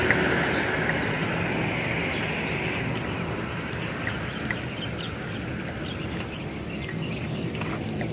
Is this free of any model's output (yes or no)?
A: yes